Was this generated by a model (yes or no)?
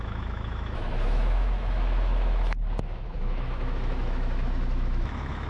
yes